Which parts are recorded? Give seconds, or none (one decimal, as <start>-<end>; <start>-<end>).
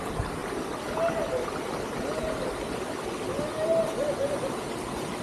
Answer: 0.0-5.2